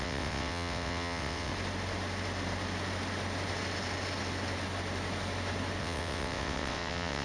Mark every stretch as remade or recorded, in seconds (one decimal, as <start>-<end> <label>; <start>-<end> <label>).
0.0-1.5 remade; 1.5-5.8 recorded; 5.8-7.2 remade